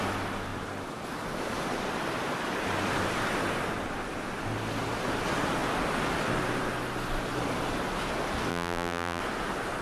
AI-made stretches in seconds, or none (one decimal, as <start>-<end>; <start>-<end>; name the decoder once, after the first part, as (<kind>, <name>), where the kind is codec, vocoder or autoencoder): 8.5-9.2 (vocoder, BigVGAN v2)